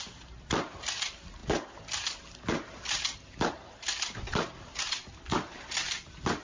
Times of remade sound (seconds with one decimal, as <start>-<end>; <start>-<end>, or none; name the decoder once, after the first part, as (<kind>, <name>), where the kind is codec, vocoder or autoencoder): none